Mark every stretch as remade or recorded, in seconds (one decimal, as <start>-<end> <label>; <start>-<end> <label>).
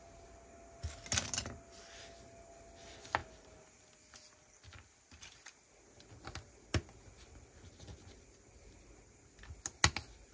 0.0-10.3 recorded